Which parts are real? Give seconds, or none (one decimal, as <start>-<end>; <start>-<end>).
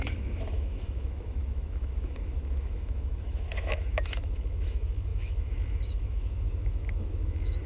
none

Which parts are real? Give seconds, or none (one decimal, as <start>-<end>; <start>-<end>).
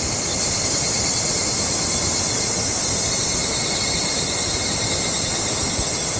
0.0-6.2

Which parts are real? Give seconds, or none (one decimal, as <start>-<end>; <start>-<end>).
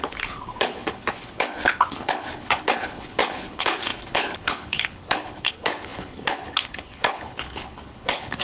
none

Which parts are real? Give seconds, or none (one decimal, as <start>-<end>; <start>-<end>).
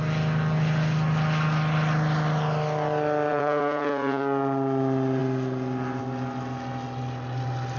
0.0-3.3; 4.2-7.8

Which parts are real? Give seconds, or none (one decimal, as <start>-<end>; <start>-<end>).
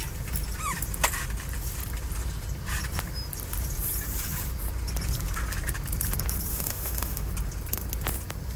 0.0-6.5; 7.3-8.6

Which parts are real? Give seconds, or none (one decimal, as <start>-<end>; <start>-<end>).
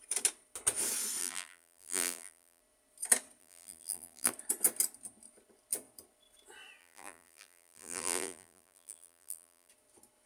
0.0-1.2; 2.6-3.4; 4.3-6.8; 9.7-10.3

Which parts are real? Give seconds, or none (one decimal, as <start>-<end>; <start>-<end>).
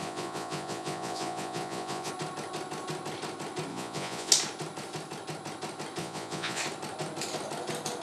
2.1-3.7; 4.3-6.0; 6.6-8.0